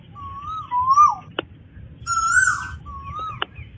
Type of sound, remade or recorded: recorded